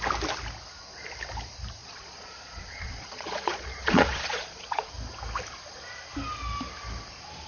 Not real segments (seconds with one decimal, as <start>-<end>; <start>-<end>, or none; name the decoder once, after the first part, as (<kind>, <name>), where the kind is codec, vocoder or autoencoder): 1.8-4.9 (vocoder, Vocos)